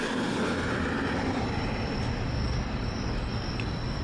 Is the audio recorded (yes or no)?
yes